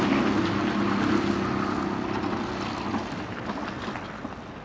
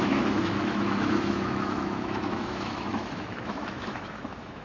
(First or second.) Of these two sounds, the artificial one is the second